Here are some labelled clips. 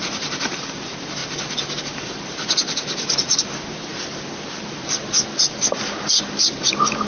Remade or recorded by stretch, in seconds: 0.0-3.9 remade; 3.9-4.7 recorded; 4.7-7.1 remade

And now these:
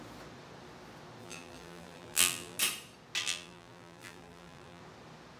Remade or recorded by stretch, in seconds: 0.0-1.2 recorded; 1.2-2.6 remade; 2.6-3.2 recorded; 3.2-4.8 remade; 4.8-5.4 recorded

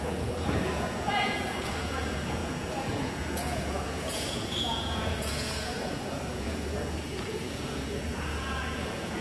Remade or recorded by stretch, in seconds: 0.0-9.2 remade

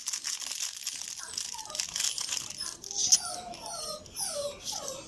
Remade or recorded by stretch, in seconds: 0.0-5.1 recorded

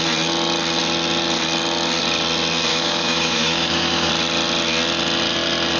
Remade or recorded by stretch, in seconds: 0.0-2.7 recorded; 2.7-4.1 remade; 4.1-5.8 recorded

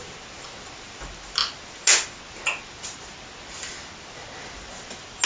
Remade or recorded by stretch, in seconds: 0.0-5.2 recorded

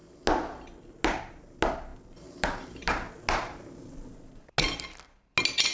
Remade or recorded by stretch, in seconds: 0.0-5.7 recorded